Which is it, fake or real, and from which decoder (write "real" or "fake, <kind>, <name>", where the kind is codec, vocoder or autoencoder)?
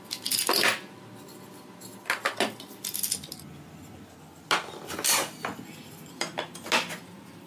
real